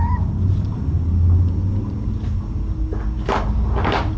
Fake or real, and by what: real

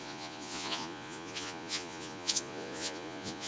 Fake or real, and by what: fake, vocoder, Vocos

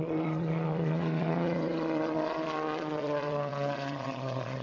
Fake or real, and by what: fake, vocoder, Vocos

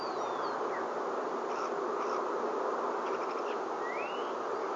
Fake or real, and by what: real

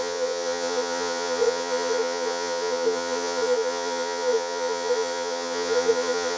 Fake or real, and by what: fake, vocoder, Vocos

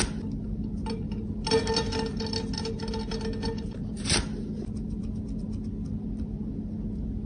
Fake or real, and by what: real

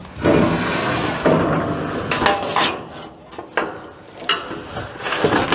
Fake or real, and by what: real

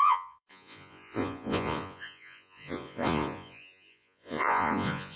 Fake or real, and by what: fake, vocoder, Vocos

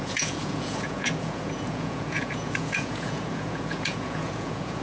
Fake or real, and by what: fake, vocoder, Vocos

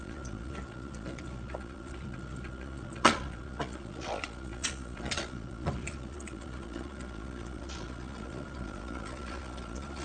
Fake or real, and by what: fake, vocoder, Vocos